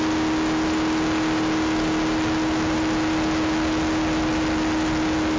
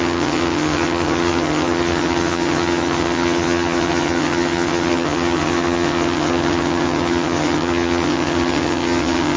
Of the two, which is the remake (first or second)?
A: second